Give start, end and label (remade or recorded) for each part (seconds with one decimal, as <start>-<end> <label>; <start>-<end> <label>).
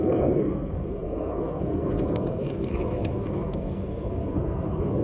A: 0.0-5.0 remade